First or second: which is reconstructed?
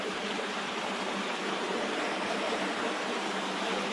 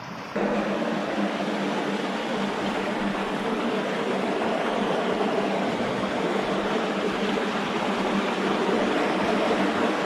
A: first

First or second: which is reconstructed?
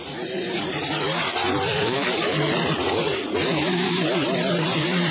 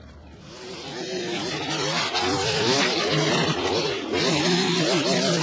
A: first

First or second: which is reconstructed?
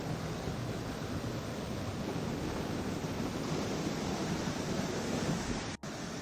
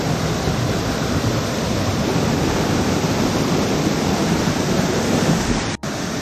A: second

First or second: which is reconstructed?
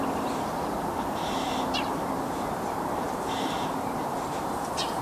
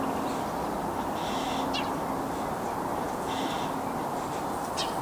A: first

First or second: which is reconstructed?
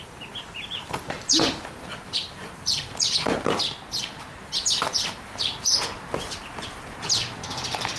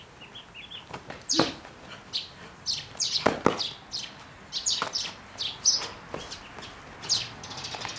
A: first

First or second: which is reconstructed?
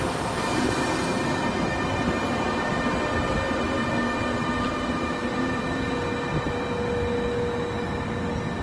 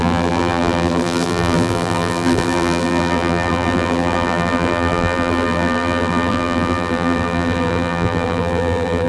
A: second